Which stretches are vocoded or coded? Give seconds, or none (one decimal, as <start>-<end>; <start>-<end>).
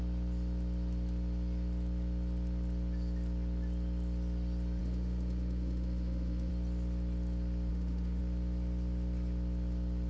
4.8-6.5; 7.7-8.2